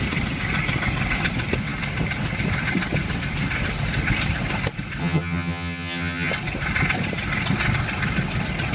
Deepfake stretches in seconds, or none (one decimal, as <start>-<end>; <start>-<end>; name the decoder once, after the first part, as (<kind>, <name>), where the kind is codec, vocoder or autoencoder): 5.0-6.3 (vocoder, HiFi-GAN)